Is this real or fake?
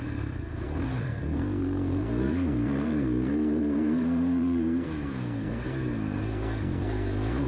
fake